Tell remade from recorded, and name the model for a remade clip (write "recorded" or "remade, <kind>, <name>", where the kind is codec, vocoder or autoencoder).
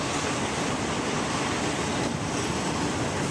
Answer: recorded